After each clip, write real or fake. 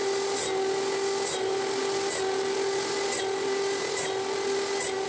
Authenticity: real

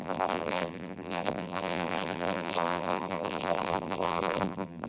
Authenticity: fake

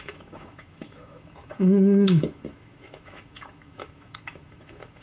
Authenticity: fake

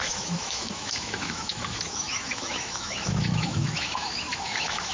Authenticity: fake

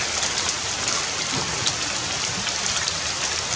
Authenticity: real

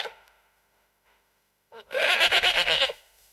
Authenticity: fake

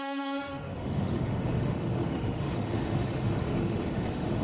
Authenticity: fake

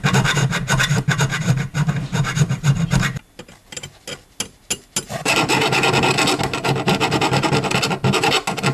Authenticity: real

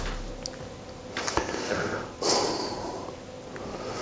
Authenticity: real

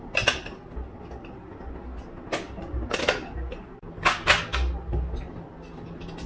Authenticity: real